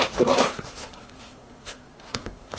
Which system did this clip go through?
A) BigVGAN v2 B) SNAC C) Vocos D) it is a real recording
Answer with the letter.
B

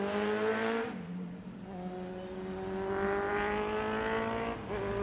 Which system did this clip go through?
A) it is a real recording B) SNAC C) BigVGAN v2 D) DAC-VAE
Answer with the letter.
A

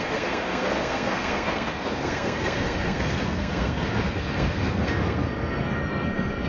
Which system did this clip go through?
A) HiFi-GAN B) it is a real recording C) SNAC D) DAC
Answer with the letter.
C